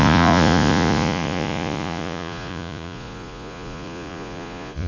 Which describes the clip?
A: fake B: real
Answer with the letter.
A